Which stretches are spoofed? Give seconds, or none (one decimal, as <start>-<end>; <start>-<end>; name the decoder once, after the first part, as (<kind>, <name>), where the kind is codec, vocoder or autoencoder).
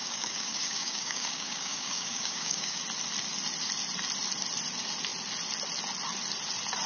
0.0-2.8 (codec, DAC)